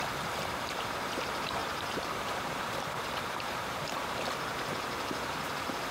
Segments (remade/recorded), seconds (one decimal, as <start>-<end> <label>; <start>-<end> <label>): 0.0-1.6 recorded; 1.6-5.1 remade; 5.1-5.9 recorded